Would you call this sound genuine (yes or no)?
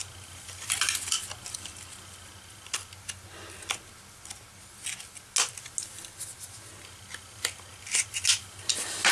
yes